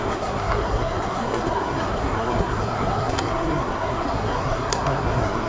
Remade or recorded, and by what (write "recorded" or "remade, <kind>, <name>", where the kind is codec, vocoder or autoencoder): remade, codec, SNAC